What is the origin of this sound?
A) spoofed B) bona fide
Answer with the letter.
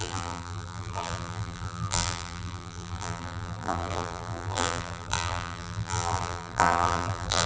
A